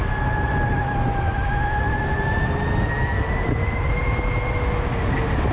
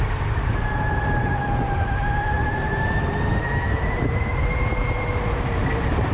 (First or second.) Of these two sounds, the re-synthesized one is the second